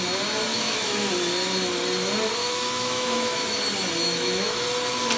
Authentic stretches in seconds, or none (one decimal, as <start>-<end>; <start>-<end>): 0.0-0.5; 1.1-2.4; 3.6-4.0; 4.6-5.2